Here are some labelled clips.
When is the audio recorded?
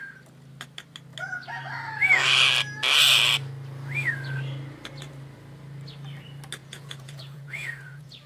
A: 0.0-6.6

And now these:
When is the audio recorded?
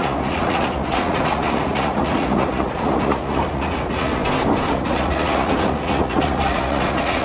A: 4.2-4.7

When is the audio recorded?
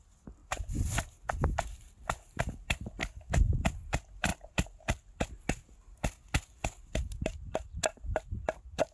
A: 0.0-8.9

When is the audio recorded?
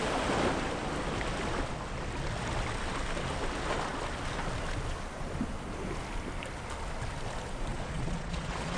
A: 0.0-7.7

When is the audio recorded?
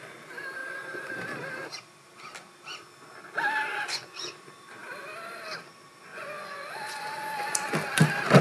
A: 0.0-0.6; 1.1-3.7; 4.3-6.1; 7.5-8.4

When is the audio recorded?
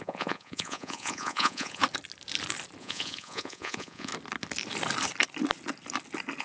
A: 1.8-2.8; 4.1-6.4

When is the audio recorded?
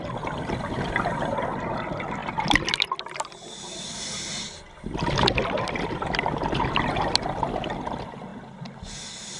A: 0.0-9.4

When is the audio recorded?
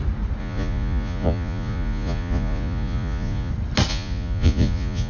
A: 0.0-0.4; 3.5-3.9